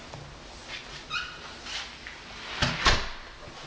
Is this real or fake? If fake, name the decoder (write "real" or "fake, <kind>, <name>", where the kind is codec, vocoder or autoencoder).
real